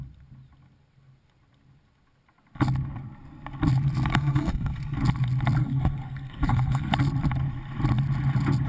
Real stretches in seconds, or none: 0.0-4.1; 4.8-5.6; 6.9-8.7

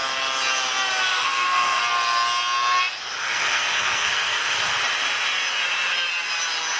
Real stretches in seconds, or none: 0.0-1.1; 1.8-3.2; 4.7-6.8

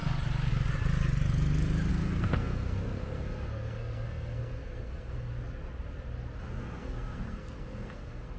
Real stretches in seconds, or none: 0.0-1.9; 5.3-6.6

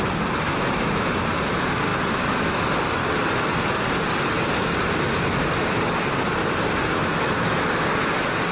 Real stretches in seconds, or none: 0.0-8.5

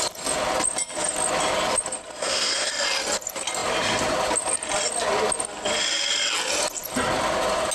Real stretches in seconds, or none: 0.0-2.2; 2.7-7.7

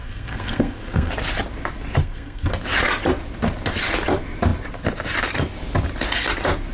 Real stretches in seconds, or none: 1.1-2.0; 2.5-6.7

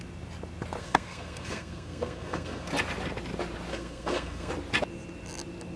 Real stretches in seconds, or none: 0.0-0.8; 2.7-3.7; 4.5-5.8